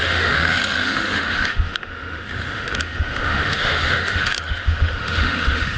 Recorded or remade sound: remade